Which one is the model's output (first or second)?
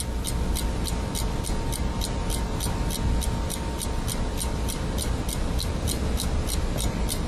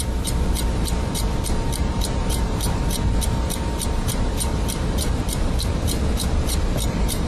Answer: second